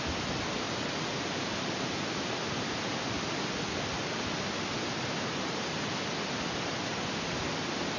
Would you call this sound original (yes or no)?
yes